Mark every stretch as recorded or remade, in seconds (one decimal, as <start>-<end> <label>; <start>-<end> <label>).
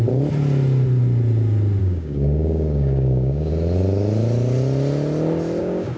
0.0-1.8 recorded; 1.8-3.5 remade; 3.5-5.6 recorded; 5.6-6.0 remade